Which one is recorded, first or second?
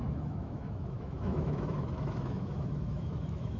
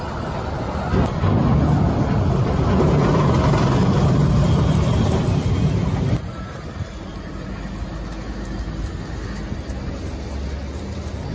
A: second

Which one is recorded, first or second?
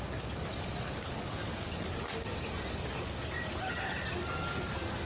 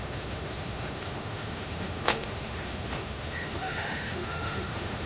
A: first